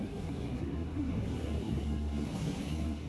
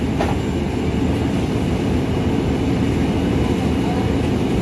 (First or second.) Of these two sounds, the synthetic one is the first